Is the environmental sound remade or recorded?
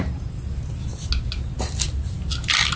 recorded